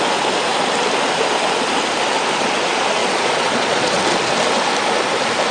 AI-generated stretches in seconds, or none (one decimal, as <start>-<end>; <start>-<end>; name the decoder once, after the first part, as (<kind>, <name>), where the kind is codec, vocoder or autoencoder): 3.0-4.0 (vocoder, Vocos)